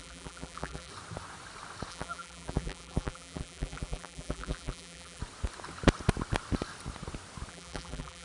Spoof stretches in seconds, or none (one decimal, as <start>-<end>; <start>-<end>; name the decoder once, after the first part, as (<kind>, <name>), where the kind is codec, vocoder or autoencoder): 0.0-0.9 (vocoder, BigVGAN v2); 1.9-5.2; 7.5-8.2